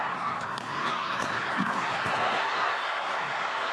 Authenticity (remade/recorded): remade